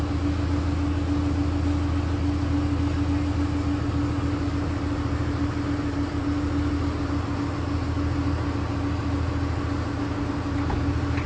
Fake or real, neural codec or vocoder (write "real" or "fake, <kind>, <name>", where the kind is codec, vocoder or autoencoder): real